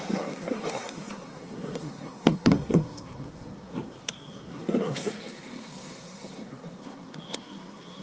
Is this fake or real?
fake